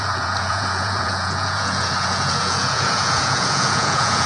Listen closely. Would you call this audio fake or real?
fake